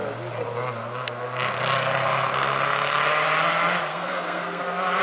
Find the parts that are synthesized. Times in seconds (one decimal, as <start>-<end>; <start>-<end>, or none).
3.9-4.6